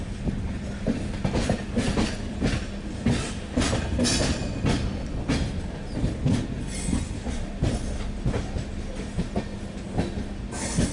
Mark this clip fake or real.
real